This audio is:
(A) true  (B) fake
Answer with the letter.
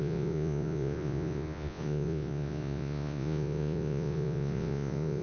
B